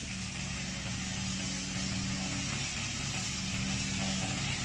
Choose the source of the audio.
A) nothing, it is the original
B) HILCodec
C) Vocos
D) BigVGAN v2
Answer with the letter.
A